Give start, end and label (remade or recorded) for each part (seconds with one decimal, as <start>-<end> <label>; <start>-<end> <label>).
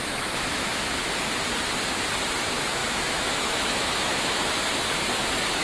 0.0-1.0 remade; 1.0-2.4 recorded; 2.4-5.6 remade